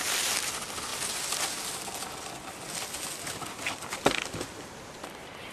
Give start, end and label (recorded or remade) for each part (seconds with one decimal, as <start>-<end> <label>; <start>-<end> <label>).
0.0-5.5 recorded